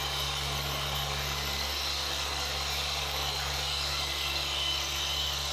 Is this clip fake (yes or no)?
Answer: yes